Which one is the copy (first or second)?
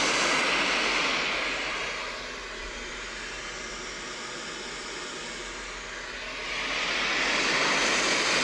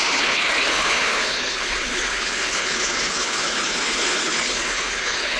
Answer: second